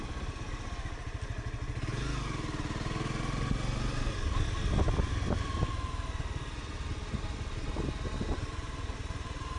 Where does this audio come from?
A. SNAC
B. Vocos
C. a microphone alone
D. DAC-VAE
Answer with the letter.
C